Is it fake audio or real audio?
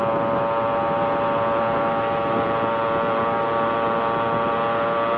real